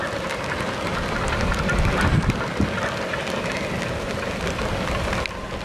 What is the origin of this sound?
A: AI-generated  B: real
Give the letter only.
B